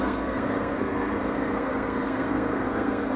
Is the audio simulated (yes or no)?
yes